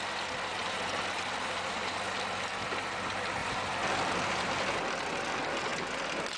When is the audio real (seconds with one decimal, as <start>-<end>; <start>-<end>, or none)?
0.0-0.5; 2.0-6.4